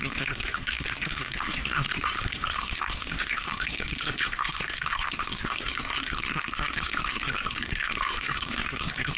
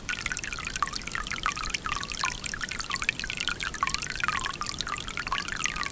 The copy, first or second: first